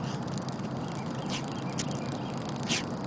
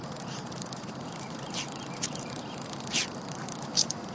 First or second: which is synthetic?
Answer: second